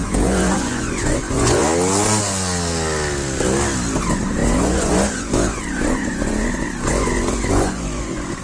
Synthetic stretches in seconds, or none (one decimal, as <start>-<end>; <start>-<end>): 0.0-1.6; 4.0-8.4